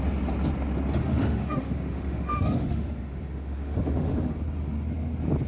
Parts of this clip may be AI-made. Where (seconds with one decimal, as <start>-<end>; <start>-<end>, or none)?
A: 1.0-4.3